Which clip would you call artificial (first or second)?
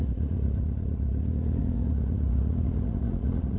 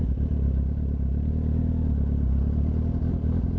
first